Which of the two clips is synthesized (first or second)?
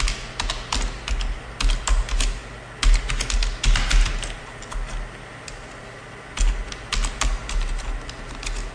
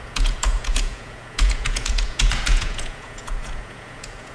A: second